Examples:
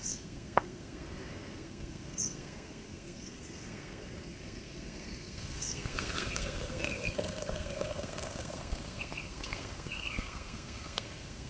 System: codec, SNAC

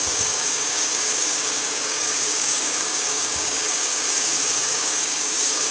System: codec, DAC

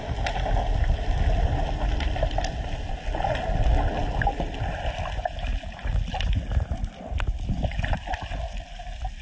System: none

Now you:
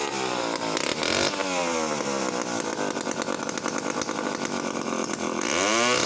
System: none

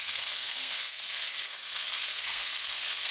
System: codec, SNAC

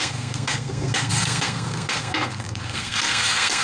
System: codec, SNAC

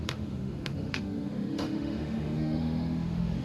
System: autoencoder, DAC-VAE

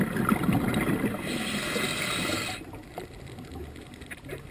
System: none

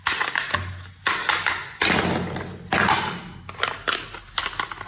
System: none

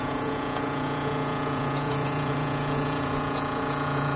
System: vocoder, Vocos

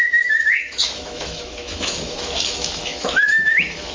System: autoencoder, DAC-VAE